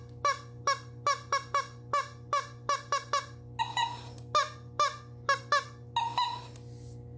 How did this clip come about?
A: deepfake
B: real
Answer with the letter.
B